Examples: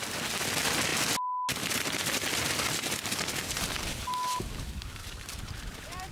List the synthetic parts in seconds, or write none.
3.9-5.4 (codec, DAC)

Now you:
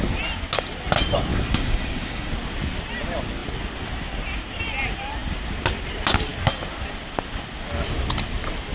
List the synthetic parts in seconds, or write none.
1.3-2.3 (codec, DAC)

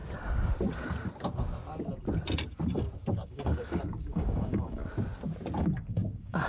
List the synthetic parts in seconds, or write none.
3.1-4.8 (codec, DAC); 5.6-6.5

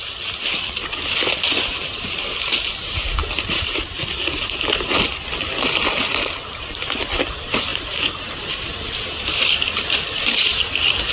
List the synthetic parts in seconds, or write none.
none

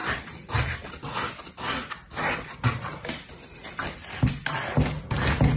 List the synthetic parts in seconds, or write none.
none

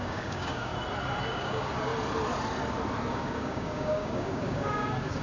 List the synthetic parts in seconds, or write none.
0.0-0.7 (codec, DAC); 1.3-1.9; 3.1-5.2

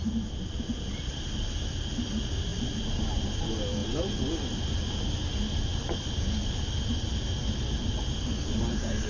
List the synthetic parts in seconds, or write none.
none

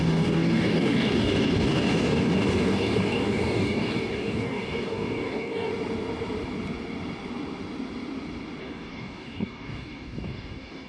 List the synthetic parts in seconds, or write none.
0.0-5.7 (codec, DAC); 8.6-10.9